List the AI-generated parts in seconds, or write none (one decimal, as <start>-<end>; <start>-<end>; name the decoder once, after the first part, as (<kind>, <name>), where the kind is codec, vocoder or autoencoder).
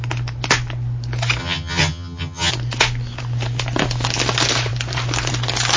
1.4-2.5 (vocoder, HiFi-GAN)